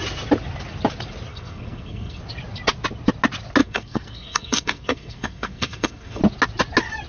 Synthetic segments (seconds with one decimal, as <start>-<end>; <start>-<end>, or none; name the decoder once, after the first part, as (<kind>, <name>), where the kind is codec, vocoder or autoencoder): 1.3-2.2 (codec, SNAC); 3.6-6.2